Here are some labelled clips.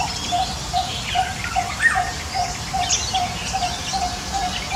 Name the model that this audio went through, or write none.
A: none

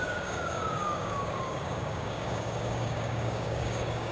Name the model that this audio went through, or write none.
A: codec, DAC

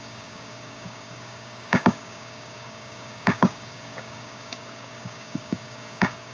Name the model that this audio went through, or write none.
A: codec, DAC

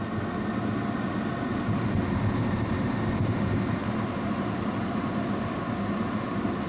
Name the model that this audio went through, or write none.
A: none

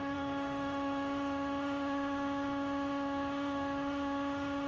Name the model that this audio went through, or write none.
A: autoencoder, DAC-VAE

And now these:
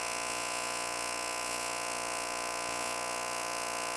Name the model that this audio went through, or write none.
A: vocoder, Vocos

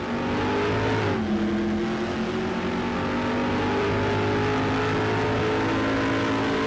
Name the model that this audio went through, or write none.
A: none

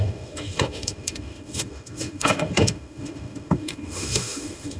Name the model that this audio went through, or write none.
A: autoencoder, DAC-VAE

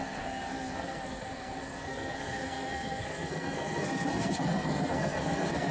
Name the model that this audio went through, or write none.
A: codec, SNAC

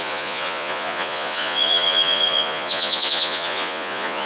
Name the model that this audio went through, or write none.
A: vocoder, Vocos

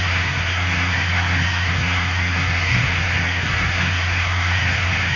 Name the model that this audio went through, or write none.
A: codec, SNAC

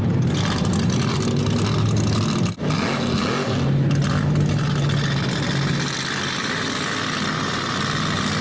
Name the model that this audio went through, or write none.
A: none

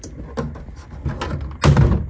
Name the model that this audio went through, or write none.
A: none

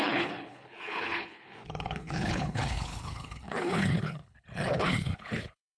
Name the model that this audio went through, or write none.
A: codec, HILCodec